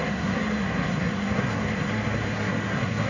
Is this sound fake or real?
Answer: fake